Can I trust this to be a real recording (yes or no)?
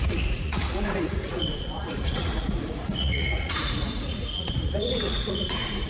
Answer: no